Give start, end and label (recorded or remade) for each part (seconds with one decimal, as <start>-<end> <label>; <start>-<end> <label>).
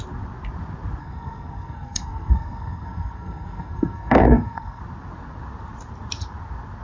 0.0-1.0 recorded; 1.0-4.8 remade; 4.8-6.8 recorded